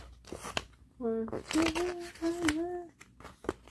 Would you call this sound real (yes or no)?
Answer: yes